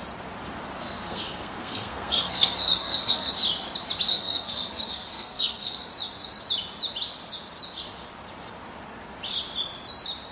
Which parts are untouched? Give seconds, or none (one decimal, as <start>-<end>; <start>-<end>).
0.0-0.8; 3.3-4.1; 5.9-10.3